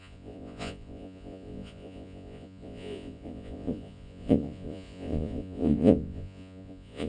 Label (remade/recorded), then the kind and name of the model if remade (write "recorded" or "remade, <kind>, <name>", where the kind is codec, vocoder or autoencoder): remade, vocoder, Vocos